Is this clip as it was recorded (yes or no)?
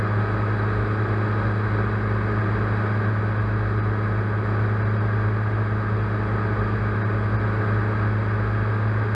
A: yes